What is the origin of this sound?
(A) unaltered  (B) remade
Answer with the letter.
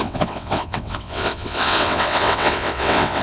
B